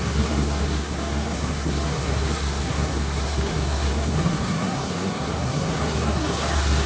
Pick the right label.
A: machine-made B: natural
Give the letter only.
A